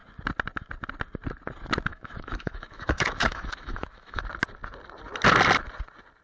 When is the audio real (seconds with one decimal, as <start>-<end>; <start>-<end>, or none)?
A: 0.0-1.9; 4.2-6.2